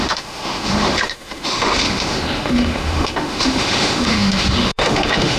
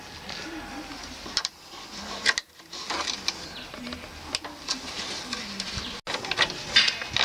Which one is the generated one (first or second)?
first